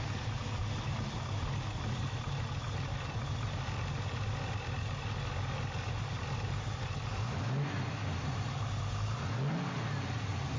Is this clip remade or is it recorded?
recorded